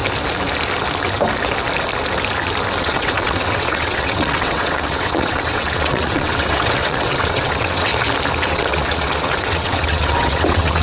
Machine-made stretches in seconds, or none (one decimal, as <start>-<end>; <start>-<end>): 2.8-7.9; 8.5-10.8